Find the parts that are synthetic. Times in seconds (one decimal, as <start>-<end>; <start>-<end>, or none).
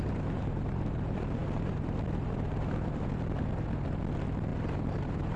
0.0-5.4